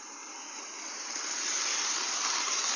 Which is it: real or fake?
real